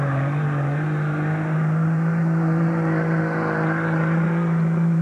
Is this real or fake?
real